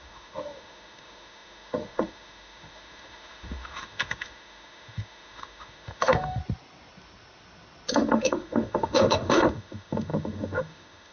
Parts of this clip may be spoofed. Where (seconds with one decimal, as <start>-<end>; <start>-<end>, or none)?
0.0-6.4; 7.9-11.1